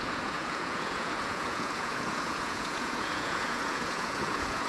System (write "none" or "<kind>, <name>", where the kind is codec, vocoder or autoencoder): vocoder, Vocos